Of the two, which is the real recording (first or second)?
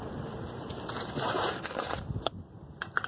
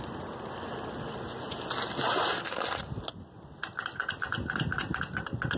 second